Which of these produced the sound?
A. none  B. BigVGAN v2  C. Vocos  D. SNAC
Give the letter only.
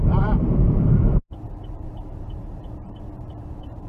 B